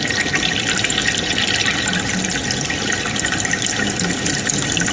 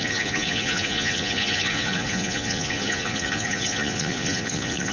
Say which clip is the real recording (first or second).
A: first